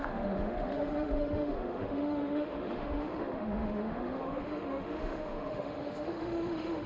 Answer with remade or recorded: remade